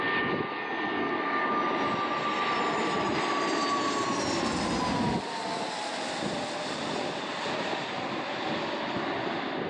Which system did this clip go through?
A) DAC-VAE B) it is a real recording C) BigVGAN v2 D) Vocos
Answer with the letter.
B